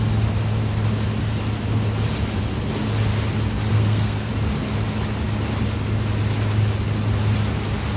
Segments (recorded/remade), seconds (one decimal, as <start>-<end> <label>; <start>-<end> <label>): 0.0-3.7 recorded; 3.7-4.3 remade; 4.3-8.0 recorded